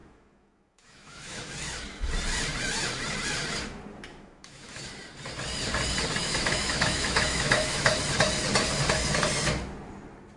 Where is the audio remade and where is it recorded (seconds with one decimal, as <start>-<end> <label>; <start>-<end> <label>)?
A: 0.0-1.5 remade; 1.5-4.1 recorded; 4.1-4.8 remade; 4.8-6.2 recorded; 6.2-7.9 remade; 7.9-10.4 recorded